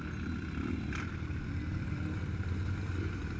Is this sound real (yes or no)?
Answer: yes